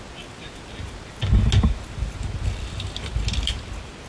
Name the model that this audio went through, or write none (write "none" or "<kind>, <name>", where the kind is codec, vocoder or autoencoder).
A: none